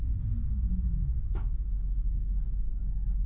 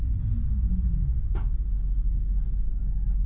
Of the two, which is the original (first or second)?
second